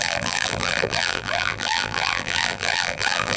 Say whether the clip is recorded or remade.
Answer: remade